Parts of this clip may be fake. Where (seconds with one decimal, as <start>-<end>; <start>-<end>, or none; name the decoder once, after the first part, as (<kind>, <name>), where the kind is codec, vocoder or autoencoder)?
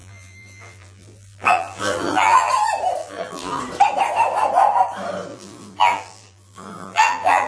0.0-2.5 (vocoder, BigVGAN v2); 3.0-3.6; 5.3-7.5